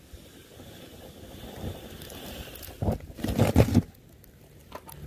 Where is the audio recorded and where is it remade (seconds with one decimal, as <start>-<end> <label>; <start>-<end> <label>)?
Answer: 0.0-5.1 recorded